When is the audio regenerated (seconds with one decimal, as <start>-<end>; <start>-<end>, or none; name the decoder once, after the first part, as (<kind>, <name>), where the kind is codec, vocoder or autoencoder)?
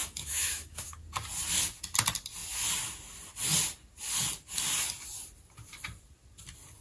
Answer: 0.0-1.0 (autoencoder, DAC-VAE)